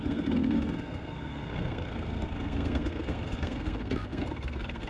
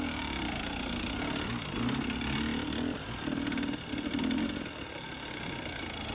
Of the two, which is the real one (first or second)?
second